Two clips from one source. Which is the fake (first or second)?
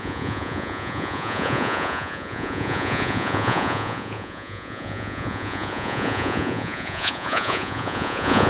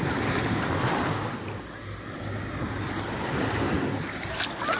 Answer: first